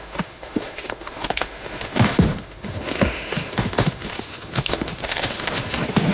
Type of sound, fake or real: fake